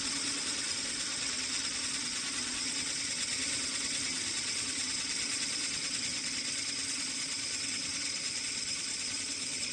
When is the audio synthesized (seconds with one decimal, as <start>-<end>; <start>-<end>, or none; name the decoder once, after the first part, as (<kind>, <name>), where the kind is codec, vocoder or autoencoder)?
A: 0.0-1.1 (vocoder, Vocos); 1.8-9.7